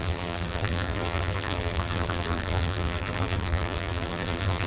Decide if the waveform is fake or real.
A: fake